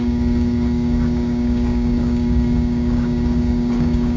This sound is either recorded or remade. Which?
remade